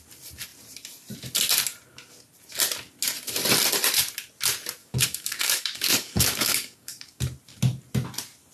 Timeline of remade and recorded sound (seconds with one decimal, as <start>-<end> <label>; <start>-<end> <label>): 0.0-4.8 recorded; 4.8-7.2 remade; 7.2-8.5 recorded